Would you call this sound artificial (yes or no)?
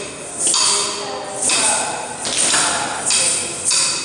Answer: no